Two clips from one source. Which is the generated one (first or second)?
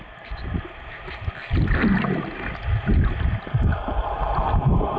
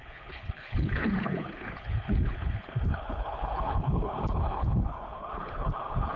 second